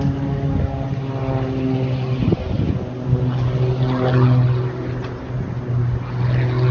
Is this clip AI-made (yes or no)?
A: no